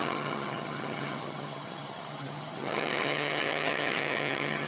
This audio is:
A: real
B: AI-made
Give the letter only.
B